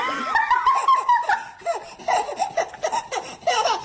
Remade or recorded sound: recorded